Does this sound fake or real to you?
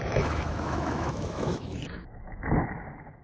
fake